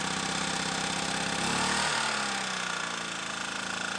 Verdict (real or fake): real